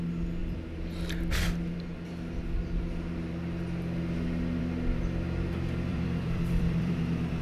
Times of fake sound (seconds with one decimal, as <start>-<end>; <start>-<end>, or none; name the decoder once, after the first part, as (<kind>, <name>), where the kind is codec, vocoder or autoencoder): 5.9-7.0 (vocoder, BigVGAN v2)